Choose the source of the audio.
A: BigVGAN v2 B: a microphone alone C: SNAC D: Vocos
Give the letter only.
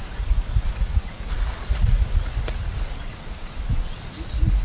D